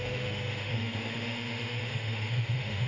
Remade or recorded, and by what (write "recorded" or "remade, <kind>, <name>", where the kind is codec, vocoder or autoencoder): remade, autoencoder, DAC-VAE